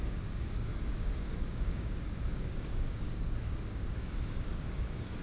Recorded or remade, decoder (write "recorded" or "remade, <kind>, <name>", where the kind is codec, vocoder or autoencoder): remade, codec, DAC